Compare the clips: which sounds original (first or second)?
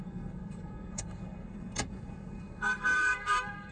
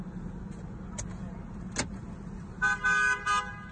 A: second